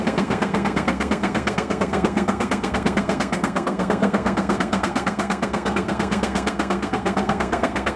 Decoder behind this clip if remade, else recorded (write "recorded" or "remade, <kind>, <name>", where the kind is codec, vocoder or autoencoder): remade, codec, SNAC